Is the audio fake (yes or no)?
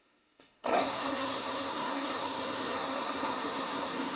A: yes